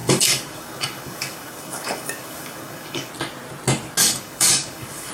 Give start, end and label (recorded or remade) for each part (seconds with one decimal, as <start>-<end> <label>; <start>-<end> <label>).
0.0-3.1 remade; 3.1-4.0 recorded; 4.0-5.1 remade